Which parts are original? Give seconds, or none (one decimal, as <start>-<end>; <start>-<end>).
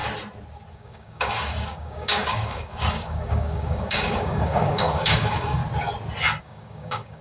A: 0.0-0.7; 5.6-6.4